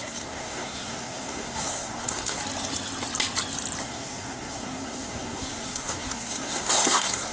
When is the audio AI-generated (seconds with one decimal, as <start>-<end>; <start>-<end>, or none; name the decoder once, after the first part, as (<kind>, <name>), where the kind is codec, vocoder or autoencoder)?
0.0-2.4 (codec, SNAC); 3.8-7.3

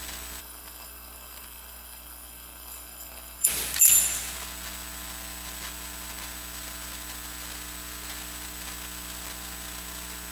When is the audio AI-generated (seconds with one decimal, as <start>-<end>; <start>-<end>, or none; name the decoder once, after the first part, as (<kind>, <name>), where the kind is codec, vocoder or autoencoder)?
0.4-3.5 (codec, SNAC)

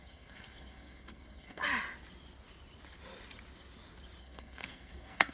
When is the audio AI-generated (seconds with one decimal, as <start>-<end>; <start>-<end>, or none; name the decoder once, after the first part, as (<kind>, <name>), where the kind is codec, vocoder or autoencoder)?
0.0-1.6 (codec, SNAC); 4.2-5.3

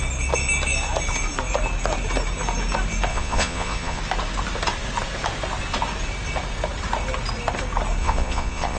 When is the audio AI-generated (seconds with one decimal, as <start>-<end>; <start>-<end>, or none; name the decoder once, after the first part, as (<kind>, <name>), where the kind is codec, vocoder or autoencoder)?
3.1-4.0 (vocoder, Vocos); 8.0-8.8

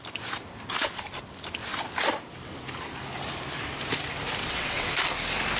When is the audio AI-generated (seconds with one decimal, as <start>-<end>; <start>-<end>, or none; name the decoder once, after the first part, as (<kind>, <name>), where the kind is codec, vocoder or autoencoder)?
4.4-4.9 (vocoder, WaveNeXt)

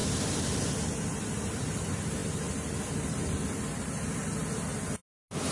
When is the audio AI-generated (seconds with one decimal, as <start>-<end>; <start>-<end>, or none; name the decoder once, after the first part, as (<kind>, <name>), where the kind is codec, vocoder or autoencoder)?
none